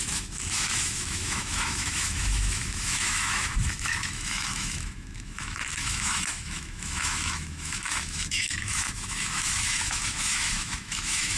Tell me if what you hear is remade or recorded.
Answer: remade